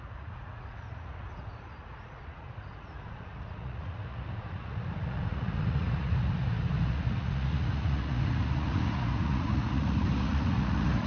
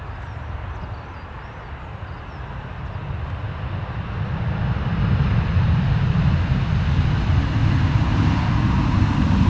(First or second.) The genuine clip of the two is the second